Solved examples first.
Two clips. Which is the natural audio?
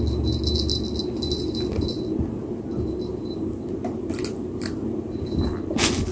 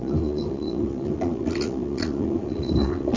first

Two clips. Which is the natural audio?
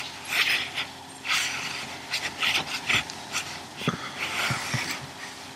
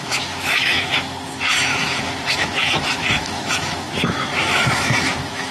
first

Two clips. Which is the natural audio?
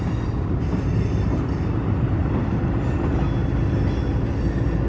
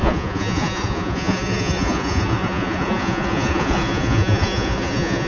first